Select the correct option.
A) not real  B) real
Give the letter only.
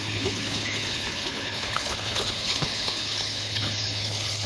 A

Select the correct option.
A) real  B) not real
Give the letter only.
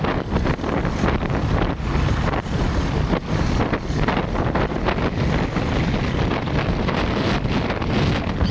A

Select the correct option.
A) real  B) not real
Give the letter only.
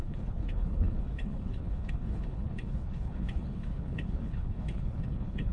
B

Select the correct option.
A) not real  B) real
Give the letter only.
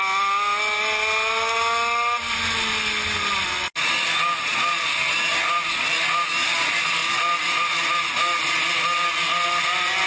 B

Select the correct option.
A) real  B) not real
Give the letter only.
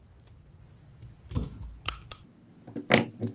A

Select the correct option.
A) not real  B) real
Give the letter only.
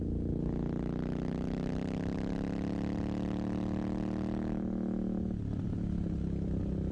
B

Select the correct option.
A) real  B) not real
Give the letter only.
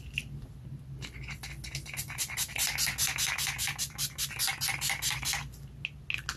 A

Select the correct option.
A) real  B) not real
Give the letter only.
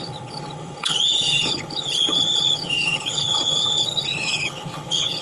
B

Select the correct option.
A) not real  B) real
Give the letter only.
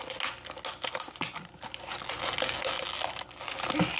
B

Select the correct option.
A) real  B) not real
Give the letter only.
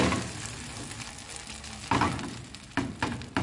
A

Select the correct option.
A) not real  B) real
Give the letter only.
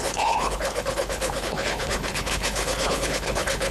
A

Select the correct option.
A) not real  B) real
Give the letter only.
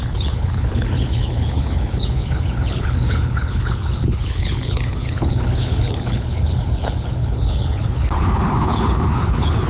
A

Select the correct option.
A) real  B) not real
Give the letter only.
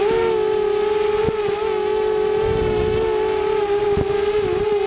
A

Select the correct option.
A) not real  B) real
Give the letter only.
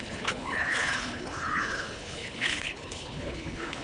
A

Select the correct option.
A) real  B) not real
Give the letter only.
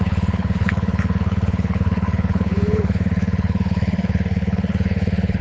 B